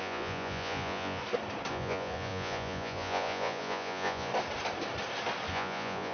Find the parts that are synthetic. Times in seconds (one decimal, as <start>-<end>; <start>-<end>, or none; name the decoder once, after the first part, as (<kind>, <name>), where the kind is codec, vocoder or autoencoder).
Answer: 0.0-1.2 (vocoder, Vocos); 1.7-4.3; 5.5-6.1